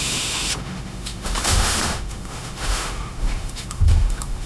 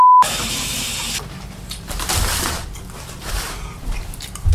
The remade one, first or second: first